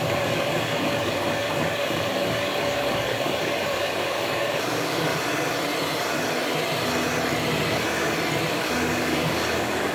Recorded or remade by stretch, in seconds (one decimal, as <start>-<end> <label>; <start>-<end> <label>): 0.0-5.1 remade; 5.1-8.5 recorded; 8.5-9.9 remade